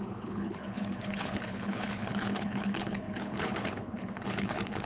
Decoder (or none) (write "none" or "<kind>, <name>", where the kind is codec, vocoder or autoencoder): codec, HILCodec